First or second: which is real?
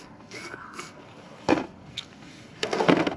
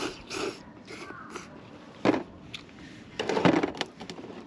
second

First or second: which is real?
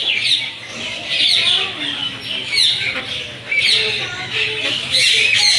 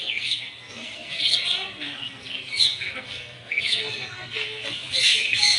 first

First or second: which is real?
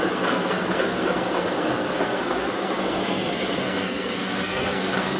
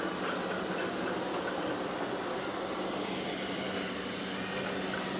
second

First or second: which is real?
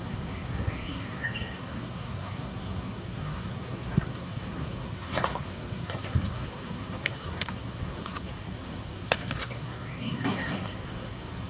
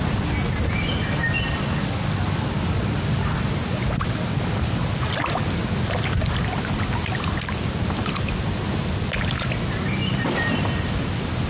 second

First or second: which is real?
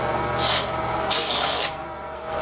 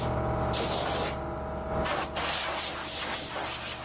second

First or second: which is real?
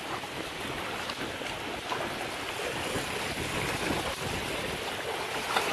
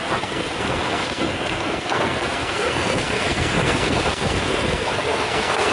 first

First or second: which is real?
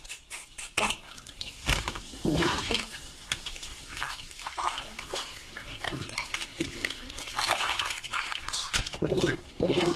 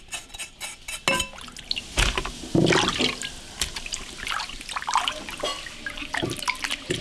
second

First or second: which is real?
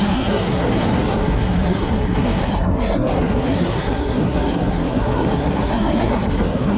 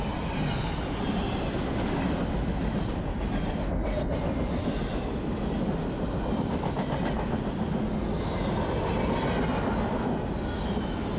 second